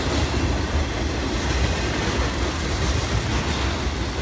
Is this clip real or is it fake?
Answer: real